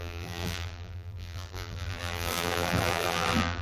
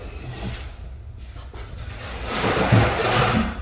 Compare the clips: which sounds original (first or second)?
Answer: second